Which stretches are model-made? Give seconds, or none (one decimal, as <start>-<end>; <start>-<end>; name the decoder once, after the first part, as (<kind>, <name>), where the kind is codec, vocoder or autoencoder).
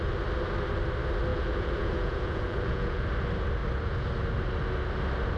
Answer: 1.3-3.0 (vocoder, Vocos)